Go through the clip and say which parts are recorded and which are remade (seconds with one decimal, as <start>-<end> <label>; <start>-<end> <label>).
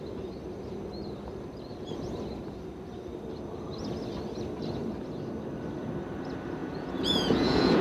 0.0-6.6 recorded; 6.6-7.8 remade